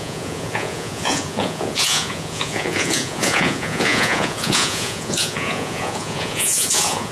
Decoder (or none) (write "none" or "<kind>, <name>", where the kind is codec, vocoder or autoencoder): vocoder, Vocos